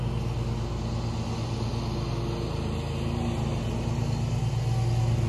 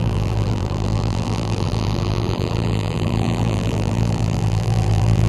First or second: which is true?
first